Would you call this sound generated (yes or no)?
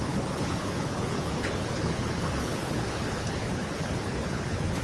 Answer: yes